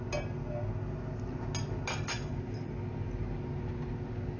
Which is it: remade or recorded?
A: recorded